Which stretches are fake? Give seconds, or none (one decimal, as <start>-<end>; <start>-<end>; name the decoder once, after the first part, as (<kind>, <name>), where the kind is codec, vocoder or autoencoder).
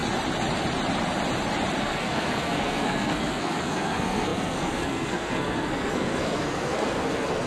1.8-7.5 (codec, SNAC)